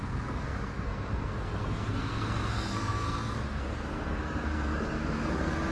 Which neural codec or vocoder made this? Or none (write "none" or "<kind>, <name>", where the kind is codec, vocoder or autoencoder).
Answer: codec, SNAC